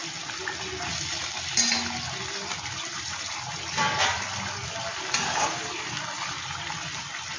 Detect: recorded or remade recorded